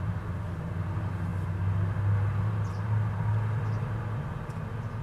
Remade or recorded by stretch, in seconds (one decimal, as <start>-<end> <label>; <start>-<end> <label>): 0.0-5.0 recorded